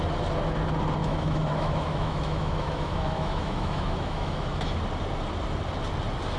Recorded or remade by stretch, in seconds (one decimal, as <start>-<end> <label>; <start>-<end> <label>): 0.0-1.0 recorded; 1.0-4.8 remade; 4.8-6.4 recorded